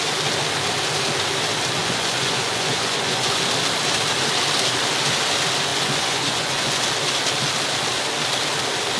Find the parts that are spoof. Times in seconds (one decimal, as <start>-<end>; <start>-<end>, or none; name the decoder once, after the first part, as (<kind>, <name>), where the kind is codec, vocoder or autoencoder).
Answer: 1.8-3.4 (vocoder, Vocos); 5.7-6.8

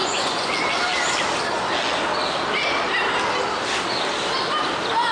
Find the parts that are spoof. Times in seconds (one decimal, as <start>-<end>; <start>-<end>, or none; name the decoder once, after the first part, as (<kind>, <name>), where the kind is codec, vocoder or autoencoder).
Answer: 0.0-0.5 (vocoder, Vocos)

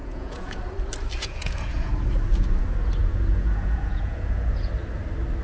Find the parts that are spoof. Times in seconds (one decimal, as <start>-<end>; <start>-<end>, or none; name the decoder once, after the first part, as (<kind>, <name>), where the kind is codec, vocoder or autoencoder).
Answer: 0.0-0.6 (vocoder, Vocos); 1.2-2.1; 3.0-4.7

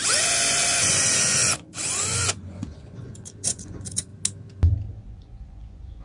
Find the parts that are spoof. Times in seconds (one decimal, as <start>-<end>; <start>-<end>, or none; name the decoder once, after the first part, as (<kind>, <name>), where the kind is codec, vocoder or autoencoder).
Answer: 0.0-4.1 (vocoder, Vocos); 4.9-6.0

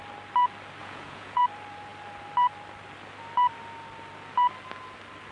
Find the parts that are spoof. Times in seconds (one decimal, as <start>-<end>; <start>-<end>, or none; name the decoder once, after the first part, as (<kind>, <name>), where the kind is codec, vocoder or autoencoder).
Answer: 0.8-1.4 (vocoder, Vocos)